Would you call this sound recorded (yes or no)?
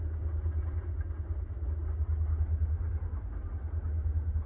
yes